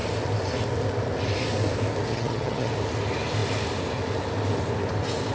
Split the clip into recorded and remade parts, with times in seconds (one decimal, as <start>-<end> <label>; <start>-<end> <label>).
0.0-2.1 recorded; 2.1-2.7 remade; 2.7-5.3 recorded